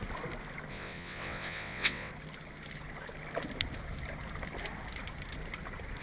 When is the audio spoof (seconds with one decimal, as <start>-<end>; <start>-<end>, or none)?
0.7-2.1